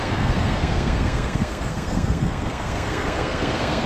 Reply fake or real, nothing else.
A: fake